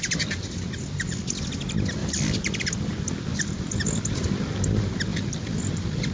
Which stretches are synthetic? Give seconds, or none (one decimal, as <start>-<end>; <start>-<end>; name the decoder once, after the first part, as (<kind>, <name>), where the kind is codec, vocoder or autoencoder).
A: 2.0-2.9 (vocoder, BigVGAN v2); 5.1-6.1